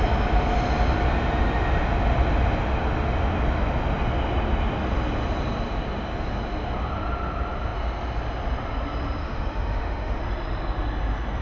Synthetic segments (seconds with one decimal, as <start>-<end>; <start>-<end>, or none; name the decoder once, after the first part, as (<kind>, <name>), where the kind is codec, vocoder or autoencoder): 9.2-10.2 (autoencoder, DAC-VAE)